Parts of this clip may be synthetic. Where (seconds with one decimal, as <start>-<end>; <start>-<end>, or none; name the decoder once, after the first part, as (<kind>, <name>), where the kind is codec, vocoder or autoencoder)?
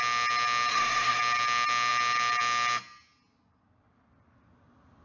0.7-1.2 (codec, SNAC)